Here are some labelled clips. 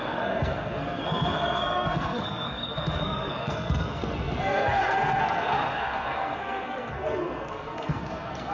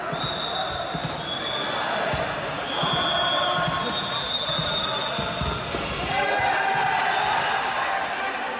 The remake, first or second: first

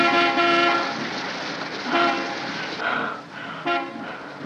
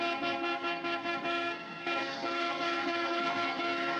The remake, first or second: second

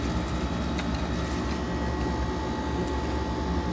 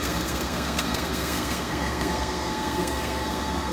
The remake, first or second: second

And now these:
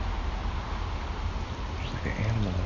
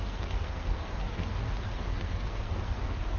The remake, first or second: second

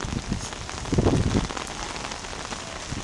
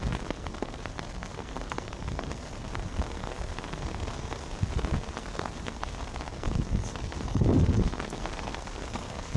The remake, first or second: second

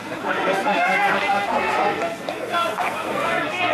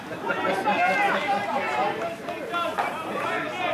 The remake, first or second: first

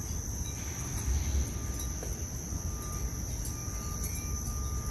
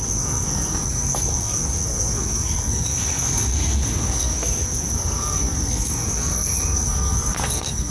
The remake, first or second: second